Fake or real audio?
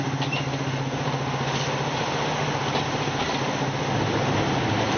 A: real